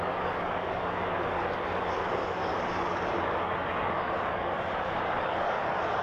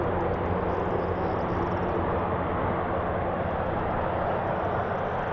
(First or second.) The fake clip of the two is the first